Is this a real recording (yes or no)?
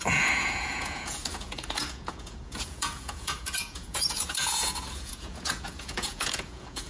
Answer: no